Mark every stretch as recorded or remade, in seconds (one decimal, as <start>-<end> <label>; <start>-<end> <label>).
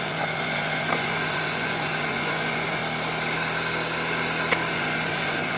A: 0.0-2.8 remade; 2.8-4.7 recorded; 4.7-5.6 remade